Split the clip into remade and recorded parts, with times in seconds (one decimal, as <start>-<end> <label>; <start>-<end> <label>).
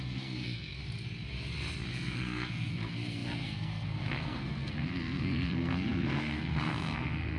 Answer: 0.0-0.8 remade; 0.8-1.9 recorded; 1.9-7.4 remade